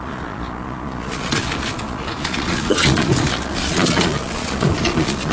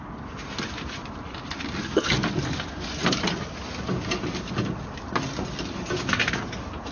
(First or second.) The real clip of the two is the second